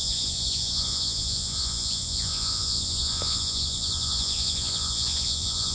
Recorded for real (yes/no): no